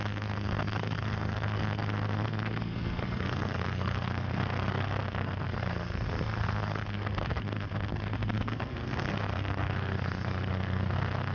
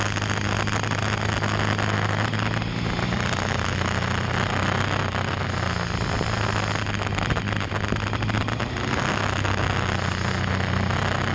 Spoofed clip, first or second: first